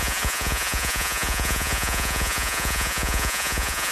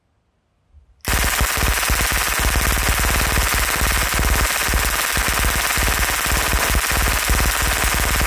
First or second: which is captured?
second